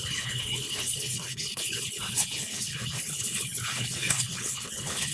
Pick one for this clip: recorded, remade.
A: remade